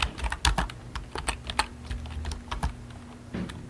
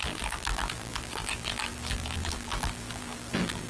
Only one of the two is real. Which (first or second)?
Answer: first